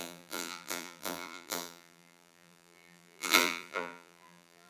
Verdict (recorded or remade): remade